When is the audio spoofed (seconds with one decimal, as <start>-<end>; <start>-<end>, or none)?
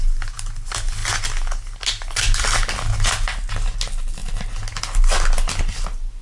none